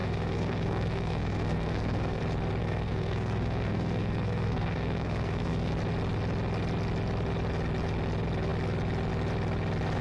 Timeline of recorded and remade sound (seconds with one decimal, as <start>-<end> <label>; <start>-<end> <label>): 0.0-2.2 remade; 2.2-2.6 recorded; 2.6-5.7 remade; 5.7-10.0 recorded